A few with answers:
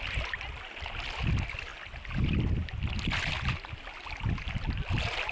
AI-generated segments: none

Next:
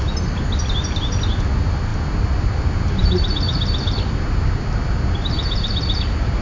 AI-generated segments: none